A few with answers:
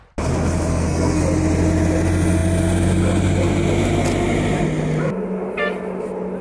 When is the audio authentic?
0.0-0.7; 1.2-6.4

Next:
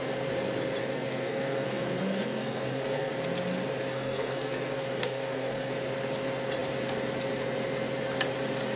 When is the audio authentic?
0.0-0.8; 3.1-3.9; 5.7-8.8

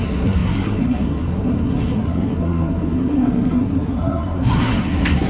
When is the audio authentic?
none